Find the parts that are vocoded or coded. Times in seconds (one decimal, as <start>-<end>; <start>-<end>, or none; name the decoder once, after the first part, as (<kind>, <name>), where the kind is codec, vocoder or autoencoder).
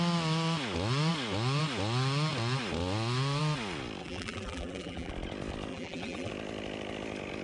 4.0-5.1 (vocoder, BigVGAN v2); 5.7-6.3